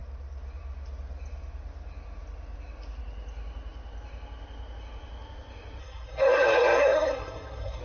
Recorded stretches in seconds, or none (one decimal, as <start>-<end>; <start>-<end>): 0.0-5.8